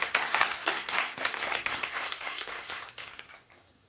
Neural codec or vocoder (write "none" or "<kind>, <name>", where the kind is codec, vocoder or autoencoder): codec, SNAC